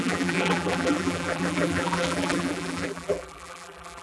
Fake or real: fake